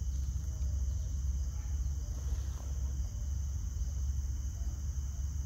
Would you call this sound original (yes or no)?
yes